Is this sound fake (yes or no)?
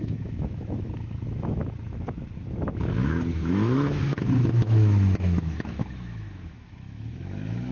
yes